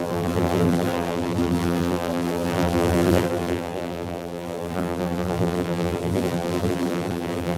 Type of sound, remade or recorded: remade